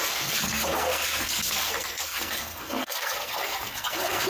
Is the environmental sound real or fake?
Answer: fake